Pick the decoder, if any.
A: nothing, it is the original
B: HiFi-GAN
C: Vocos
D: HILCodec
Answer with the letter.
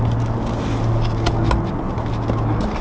A